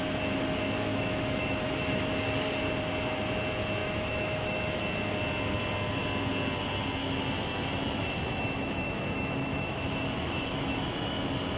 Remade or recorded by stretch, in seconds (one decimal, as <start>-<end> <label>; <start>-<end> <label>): 0.0-0.9 recorded; 0.9-2.1 remade; 2.1-3.8 recorded; 3.8-4.8 remade; 4.8-7.0 recorded; 7.0-11.2 remade; 11.2-11.6 recorded